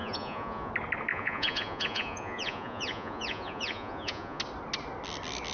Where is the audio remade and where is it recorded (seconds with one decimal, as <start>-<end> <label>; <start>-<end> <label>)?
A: 0.0-0.7 remade; 0.7-1.1 recorded; 1.1-4.4 remade; 4.4-5.5 recorded

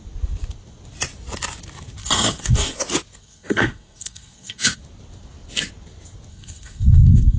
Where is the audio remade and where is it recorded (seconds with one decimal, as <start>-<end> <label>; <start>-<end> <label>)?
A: 0.0-2.0 recorded; 2.0-2.8 remade; 2.8-3.2 recorded; 3.2-4.8 remade; 4.8-6.3 recorded; 6.3-7.4 remade

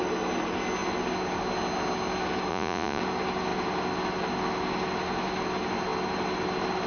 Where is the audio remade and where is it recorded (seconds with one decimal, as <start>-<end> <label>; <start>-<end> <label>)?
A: 0.0-2.5 recorded; 2.5-3.0 remade; 3.0-6.9 recorded

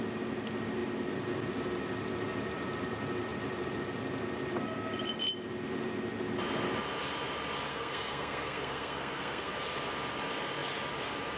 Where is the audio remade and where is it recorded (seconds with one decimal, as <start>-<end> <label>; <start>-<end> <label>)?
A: 0.0-7.7 recorded; 7.7-9.5 remade; 9.5-11.4 recorded

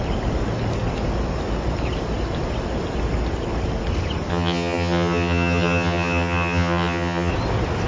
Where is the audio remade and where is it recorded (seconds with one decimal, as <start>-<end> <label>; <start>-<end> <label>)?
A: 0.0-4.3 recorded; 4.3-7.3 remade; 7.3-7.9 recorded

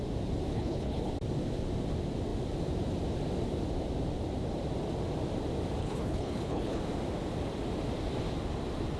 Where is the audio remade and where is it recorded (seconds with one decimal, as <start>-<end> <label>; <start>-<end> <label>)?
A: 0.0-0.5 recorded; 0.5-1.1 remade; 1.1-5.8 recorded; 5.8-6.8 remade; 6.8-9.0 recorded

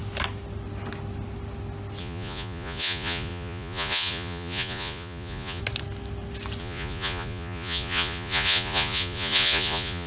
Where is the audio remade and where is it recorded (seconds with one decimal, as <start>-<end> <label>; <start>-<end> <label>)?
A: 0.0-2.0 recorded; 2.0-5.6 remade; 5.6-6.6 recorded; 6.6-10.1 remade

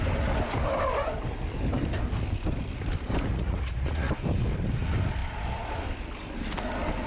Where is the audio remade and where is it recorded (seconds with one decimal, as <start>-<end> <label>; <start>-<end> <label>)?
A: 0.0-3.3 recorded; 3.3-4.1 remade; 4.1-7.1 recorded